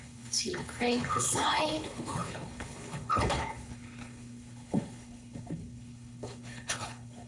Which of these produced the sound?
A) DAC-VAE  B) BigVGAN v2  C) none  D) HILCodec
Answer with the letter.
D